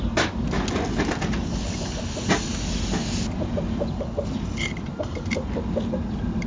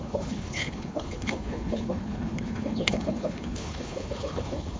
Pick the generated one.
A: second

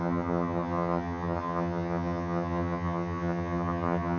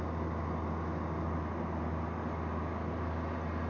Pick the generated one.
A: first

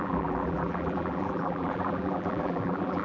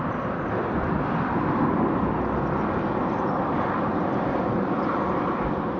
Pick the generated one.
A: first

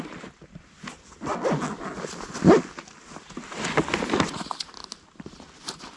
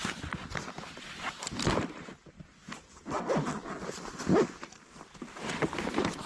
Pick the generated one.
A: second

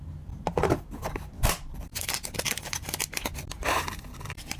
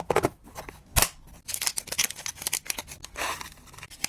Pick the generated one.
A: first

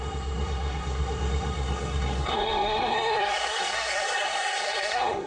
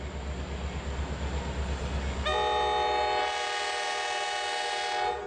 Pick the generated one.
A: first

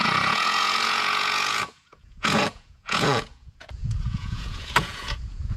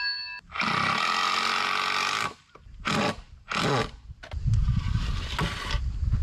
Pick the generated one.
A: first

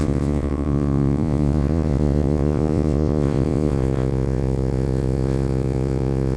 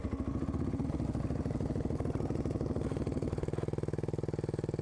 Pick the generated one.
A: first